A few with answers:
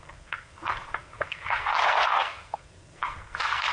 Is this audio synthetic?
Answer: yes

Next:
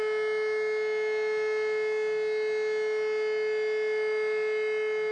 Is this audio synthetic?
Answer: no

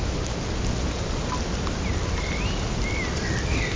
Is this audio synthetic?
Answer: no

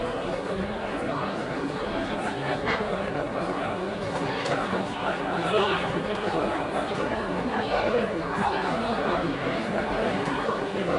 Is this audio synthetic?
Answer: yes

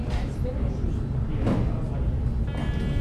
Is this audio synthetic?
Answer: no